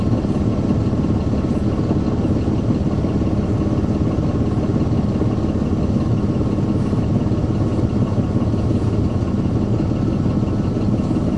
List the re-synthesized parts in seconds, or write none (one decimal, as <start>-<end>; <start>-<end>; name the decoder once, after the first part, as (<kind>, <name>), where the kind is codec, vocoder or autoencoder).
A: none